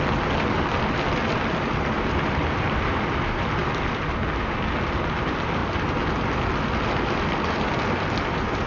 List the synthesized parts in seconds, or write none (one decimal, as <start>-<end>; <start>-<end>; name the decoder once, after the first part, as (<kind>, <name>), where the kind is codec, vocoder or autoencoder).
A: none